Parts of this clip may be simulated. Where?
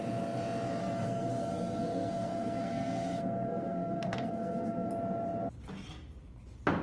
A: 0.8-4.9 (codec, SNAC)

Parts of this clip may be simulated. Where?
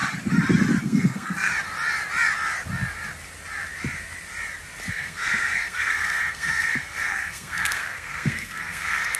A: 0.8-1.5 (codec, SNAC); 4.9-9.2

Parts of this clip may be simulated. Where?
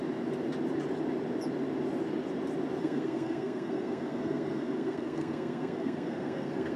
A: 2.8-6.8 (codec, SNAC)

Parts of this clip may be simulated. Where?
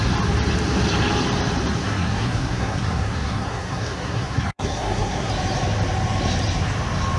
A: 1.8-5.3 (codec, SNAC)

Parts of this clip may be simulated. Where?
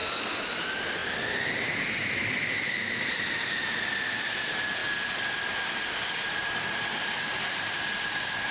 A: none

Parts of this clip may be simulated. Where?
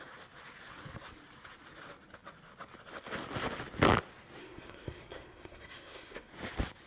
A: 4.4-6.3 (codec, SNAC)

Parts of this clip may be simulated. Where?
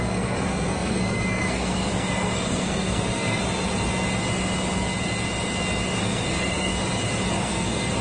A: 0.0-3.4 (codec, SNAC); 6.0-6.7; 7.3-8.0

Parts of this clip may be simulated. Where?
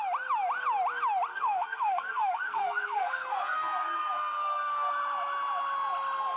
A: 1.3-4.9 (codec, SNAC)